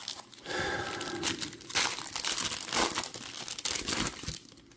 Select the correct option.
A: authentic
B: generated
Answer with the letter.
A